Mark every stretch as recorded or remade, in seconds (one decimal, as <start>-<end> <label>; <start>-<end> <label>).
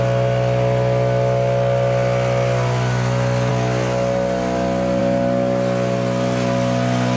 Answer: 0.0-7.2 recorded